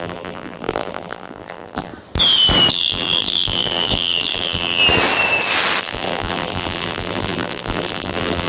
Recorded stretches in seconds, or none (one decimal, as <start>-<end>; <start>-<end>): 1.9-2.7; 4.8-5.8